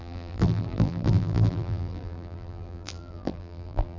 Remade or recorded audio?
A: remade